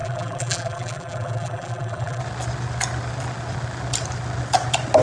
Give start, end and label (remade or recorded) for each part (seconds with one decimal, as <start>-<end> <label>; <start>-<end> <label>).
0.0-2.2 remade; 2.2-5.0 recorded